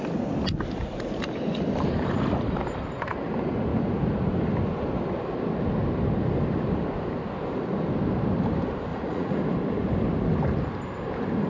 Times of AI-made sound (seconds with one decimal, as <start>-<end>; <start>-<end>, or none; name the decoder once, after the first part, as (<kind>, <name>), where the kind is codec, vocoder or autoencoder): 8.9-9.4 (vocoder, Vocos)